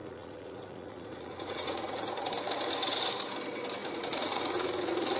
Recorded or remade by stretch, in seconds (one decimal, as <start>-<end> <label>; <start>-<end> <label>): 0.0-2.3 remade; 2.3-3.8 recorded; 3.8-5.2 remade